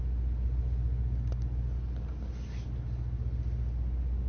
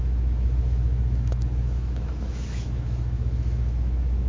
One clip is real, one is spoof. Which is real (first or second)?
first